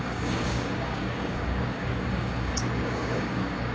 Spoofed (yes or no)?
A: yes